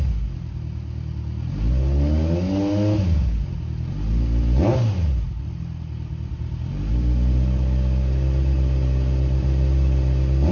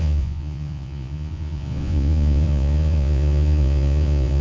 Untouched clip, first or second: first